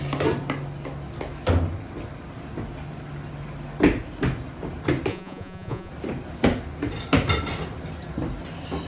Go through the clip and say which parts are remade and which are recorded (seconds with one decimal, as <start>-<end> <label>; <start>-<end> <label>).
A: 0.0-5.1 recorded; 5.1-5.9 remade; 5.9-8.9 recorded